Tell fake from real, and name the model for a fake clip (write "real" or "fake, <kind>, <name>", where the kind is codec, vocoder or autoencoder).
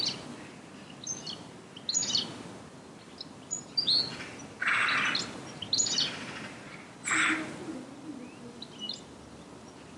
real